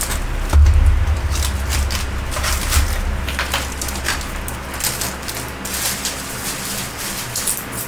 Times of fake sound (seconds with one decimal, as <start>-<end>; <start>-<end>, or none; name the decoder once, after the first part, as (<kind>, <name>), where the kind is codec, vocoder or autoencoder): none